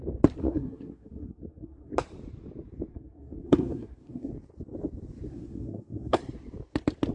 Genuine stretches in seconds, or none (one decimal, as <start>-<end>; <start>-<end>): 0.0-0.4; 1.9-2.9; 4.3-5.3; 6.2-7.1